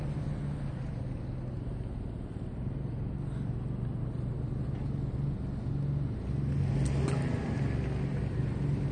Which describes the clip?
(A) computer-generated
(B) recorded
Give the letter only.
B